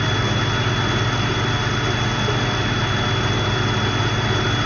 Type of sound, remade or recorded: recorded